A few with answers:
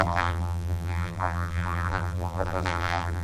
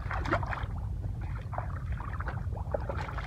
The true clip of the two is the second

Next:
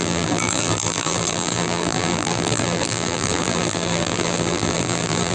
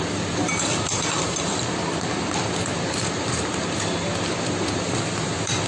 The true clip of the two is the second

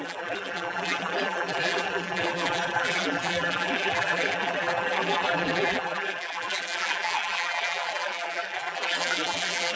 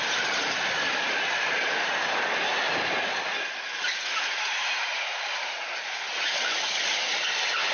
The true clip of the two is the second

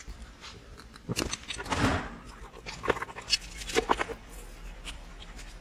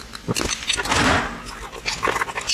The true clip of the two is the second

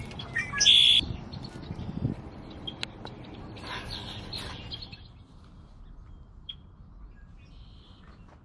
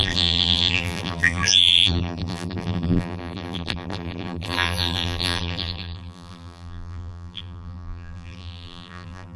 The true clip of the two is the first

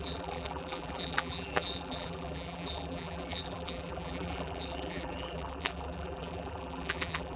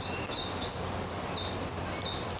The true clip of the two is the second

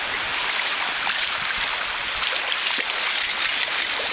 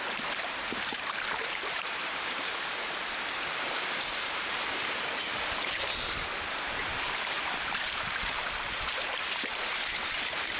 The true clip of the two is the first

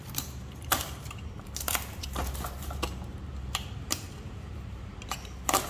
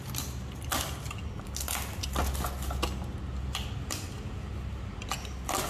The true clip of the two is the second